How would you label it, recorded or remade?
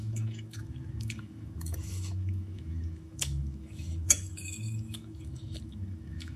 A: remade